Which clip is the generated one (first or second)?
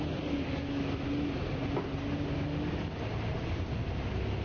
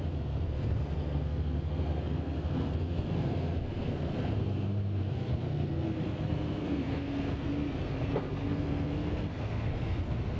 second